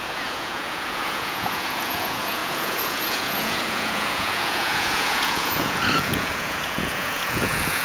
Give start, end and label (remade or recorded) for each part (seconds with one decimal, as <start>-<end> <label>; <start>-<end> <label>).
0.0-7.8 remade